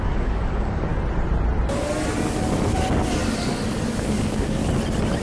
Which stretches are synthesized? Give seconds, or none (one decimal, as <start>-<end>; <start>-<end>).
0.0-0.9; 4.0-4.6